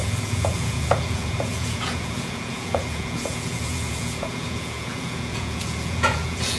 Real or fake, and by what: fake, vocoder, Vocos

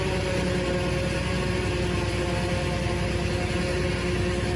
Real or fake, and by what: real